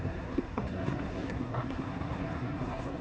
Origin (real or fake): fake